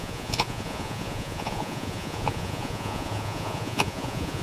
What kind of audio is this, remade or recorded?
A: remade